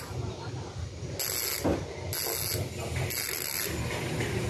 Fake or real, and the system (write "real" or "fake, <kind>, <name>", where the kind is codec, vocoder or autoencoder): real